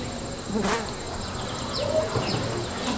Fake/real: real